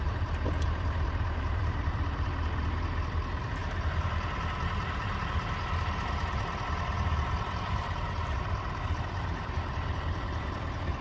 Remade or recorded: remade